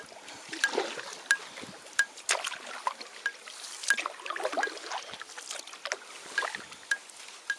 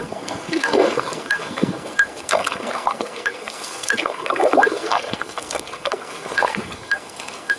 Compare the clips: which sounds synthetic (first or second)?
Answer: second